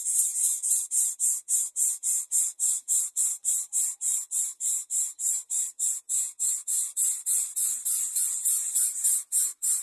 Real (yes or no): yes